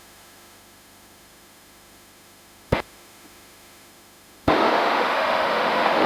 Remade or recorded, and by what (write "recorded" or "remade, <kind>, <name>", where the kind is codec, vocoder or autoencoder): remade, autoencoder, DAC-VAE